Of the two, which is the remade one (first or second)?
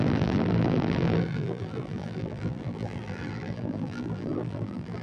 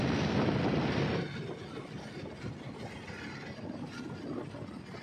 first